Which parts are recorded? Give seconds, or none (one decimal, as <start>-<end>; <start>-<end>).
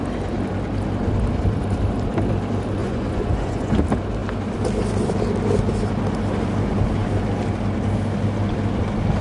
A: 0.0-2.8; 3.8-9.2